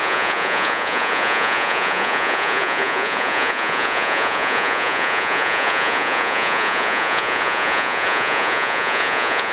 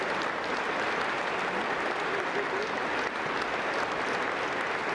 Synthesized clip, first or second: first